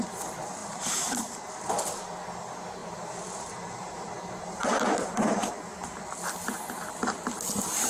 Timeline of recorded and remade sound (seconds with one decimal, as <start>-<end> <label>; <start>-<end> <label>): 0.0-0.6 recorded; 0.6-1.5 remade; 1.5-2.8 recorded; 2.8-5.5 remade; 5.5-7.9 recorded